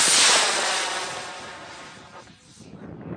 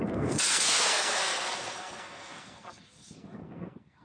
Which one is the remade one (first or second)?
second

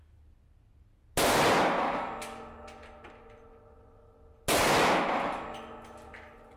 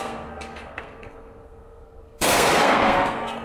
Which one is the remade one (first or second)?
second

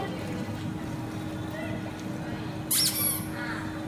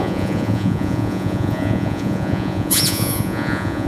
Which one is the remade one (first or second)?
second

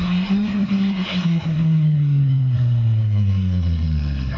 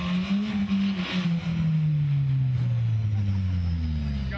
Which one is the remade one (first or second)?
first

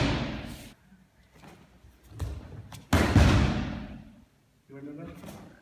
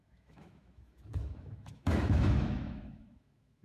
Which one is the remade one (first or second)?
second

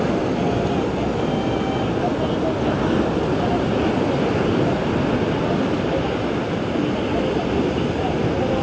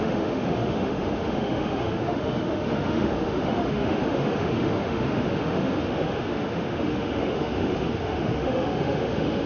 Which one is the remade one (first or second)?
second